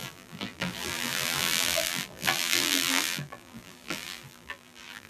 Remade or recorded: remade